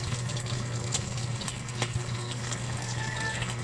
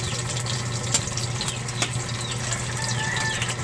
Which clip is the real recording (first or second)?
second